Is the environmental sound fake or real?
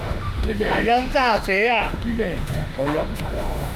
fake